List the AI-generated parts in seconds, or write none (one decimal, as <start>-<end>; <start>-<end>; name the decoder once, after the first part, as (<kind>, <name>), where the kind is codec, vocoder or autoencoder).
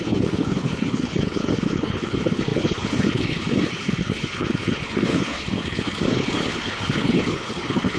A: 0.0-8.0 (codec, HILCodec)